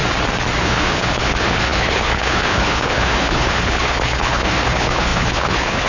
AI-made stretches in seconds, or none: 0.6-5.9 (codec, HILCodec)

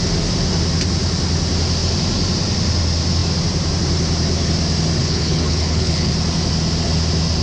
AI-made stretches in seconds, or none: 5.0-6.1 (codec, HILCodec)